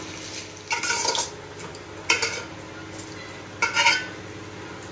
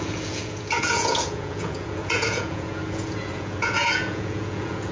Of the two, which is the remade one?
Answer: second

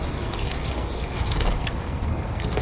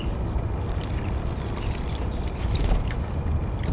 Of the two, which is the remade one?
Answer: first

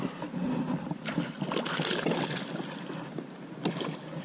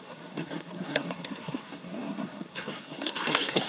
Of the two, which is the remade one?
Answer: second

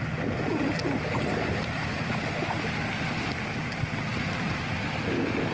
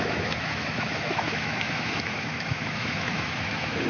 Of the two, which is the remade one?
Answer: second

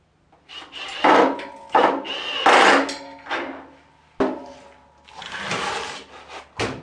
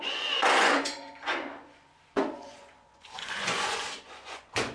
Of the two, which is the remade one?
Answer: second